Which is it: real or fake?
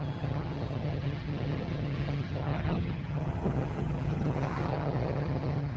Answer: fake